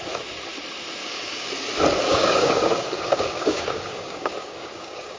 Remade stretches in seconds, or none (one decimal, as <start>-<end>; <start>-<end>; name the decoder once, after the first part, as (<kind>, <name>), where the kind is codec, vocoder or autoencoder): 1.0-1.5 (codec, DAC); 2.1-5.2